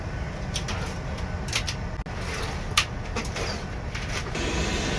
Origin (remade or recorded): recorded